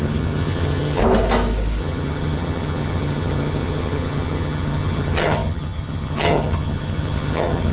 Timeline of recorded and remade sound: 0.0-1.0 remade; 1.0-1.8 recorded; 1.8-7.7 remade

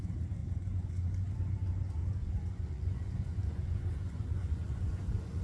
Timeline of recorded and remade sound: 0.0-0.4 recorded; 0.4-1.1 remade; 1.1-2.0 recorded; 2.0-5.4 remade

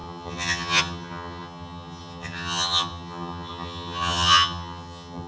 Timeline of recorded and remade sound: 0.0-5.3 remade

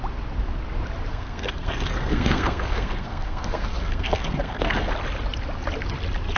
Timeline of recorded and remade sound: 0.0-1.1 recorded; 1.1-4.9 remade; 4.9-6.4 recorded

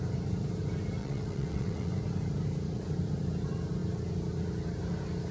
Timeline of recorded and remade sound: 0.0-1.0 recorded; 1.0-1.9 remade; 1.9-5.3 recorded

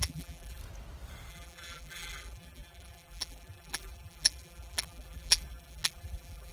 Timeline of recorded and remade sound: 0.0-0.6 remade; 0.6-1.3 recorded; 1.3-6.5 remade

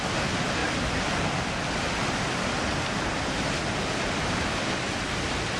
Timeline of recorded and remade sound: 0.0-5.6 recorded

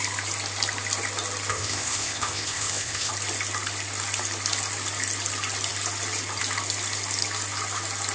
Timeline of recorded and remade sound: 0.0-1.5 recorded; 1.5-3.1 remade; 3.1-8.1 recorded